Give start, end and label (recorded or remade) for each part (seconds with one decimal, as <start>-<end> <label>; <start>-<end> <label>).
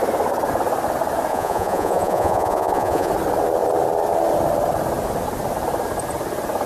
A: 0.0-1.3 recorded; 1.3-3.1 remade; 3.1-6.7 recorded